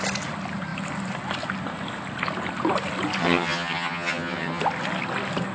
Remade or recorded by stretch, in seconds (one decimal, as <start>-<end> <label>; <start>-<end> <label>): 0.0-3.2 recorded; 3.2-4.6 remade; 4.6-5.5 recorded